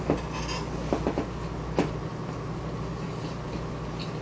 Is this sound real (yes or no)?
yes